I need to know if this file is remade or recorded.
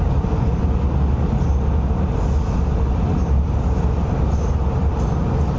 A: recorded